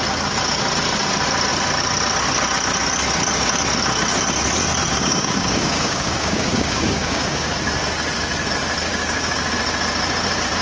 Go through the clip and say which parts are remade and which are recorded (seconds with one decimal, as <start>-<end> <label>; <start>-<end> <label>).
0.0-4.9 recorded; 4.9-7.5 remade; 7.5-8.9 recorded; 8.9-9.5 remade; 9.5-10.6 recorded